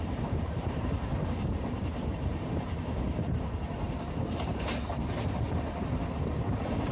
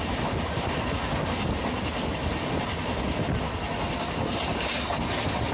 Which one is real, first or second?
second